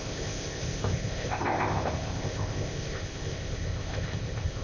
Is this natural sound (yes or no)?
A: no